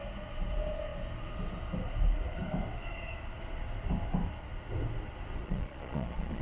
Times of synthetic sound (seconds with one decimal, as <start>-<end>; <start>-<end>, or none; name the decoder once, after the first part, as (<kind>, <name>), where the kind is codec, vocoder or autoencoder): 5.4-6.4 (vocoder, Vocos)